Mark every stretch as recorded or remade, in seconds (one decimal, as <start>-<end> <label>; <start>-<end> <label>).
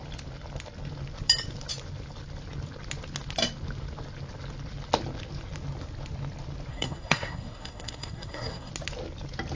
0.0-6.7 recorded; 6.7-8.7 remade; 8.7-9.6 recorded